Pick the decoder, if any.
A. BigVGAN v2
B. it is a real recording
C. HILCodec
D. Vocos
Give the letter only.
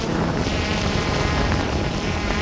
A